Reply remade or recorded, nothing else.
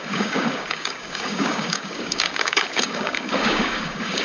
remade